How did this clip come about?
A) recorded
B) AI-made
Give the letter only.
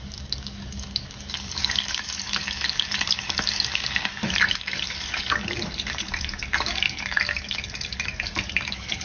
B